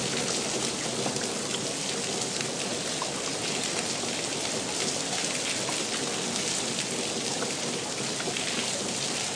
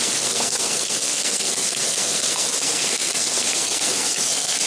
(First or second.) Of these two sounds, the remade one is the second